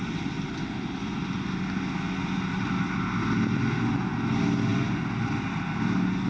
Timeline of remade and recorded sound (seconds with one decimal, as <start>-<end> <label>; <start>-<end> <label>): 0.0-6.3 recorded